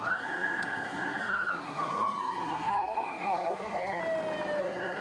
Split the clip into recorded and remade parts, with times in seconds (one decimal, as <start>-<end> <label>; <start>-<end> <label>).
0.0-4.0 remade; 4.0-4.6 recorded; 4.6-5.0 remade

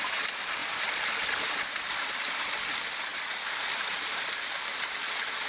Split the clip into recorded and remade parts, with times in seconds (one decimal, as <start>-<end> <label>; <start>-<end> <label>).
0.0-0.6 recorded; 0.6-2.4 remade; 2.4-3.1 recorded; 3.1-4.5 remade; 4.5-5.5 recorded

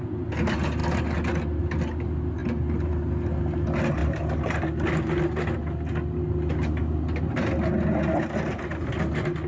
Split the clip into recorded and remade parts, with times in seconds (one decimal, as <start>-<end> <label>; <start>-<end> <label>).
0.0-9.5 recorded

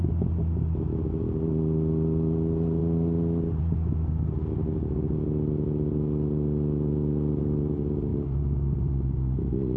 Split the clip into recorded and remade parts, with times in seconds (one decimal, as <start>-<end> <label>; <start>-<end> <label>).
0.0-9.8 recorded

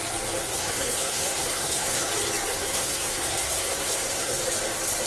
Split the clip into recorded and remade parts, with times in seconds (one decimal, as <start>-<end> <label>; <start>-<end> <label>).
0.0-0.4 recorded; 0.4-2.1 remade; 2.1-2.5 recorded; 2.5-4.4 remade; 4.4-5.1 recorded

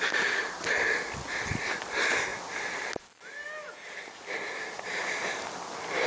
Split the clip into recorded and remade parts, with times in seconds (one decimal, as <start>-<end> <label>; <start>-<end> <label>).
0.0-6.1 recorded

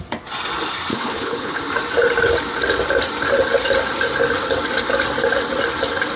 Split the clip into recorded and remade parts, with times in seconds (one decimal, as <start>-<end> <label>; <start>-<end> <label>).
0.0-0.9 recorded; 0.9-1.6 remade; 1.6-6.2 recorded